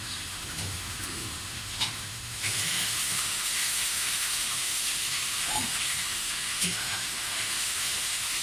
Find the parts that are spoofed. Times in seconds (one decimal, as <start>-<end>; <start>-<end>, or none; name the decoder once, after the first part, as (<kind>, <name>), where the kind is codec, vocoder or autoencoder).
0.0-8.4 (autoencoder, DAC-VAE)